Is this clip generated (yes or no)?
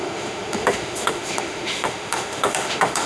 yes